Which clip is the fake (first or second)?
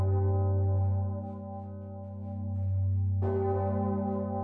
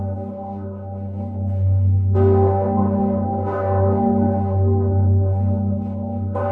second